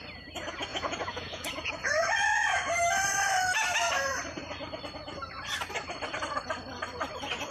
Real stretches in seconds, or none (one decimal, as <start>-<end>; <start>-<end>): 0.0-0.7; 2.0-7.5